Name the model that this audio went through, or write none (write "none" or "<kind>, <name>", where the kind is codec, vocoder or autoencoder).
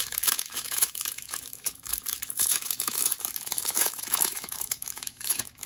autoencoder, DAC-VAE